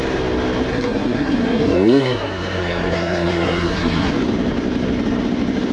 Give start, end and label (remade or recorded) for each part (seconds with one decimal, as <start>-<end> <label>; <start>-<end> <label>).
0.0-0.7 recorded; 0.7-4.1 remade; 4.1-5.7 recorded